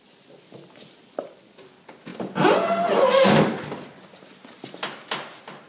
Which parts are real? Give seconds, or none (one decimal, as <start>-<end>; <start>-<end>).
0.0-5.7